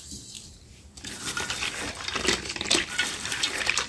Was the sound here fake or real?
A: real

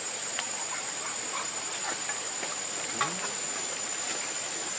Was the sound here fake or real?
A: real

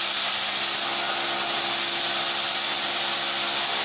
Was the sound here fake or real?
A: real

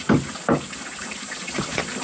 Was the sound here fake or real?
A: real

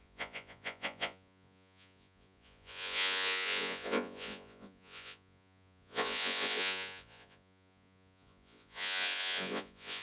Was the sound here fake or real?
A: fake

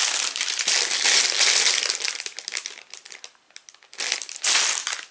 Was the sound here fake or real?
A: real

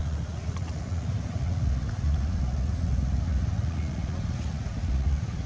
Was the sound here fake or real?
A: fake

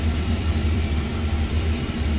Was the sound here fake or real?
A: fake